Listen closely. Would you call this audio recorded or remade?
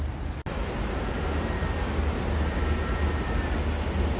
recorded